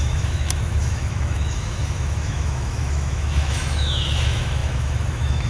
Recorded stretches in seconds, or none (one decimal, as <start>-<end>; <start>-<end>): none